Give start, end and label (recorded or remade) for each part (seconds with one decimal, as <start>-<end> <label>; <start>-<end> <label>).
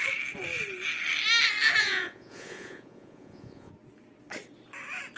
0.0-1.8 recorded; 1.8-3.7 remade; 3.7-5.2 recorded